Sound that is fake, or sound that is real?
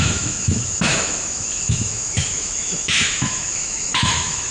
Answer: fake